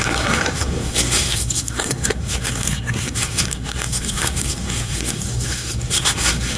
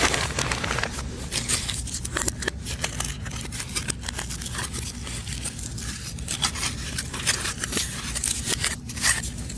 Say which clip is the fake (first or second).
first